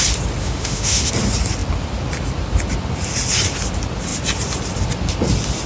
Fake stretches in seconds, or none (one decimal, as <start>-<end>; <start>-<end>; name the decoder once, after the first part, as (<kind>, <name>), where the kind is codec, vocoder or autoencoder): 0.4-1.1 (autoencoder, DAC-VAE)